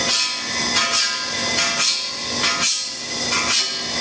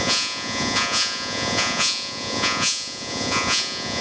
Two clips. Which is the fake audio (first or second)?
second